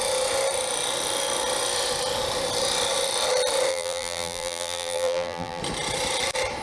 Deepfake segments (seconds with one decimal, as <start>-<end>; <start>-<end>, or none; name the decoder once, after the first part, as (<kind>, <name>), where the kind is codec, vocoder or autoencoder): 3.7-5.6 (vocoder, BigVGAN v2)